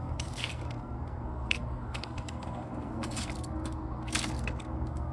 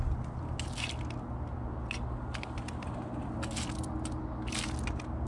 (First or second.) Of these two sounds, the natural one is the second